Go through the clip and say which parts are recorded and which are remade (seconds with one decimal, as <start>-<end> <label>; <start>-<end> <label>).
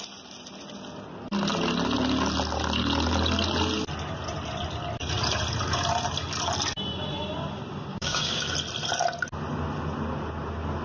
0.0-7.9 recorded; 7.9-8.5 remade; 8.5-10.8 recorded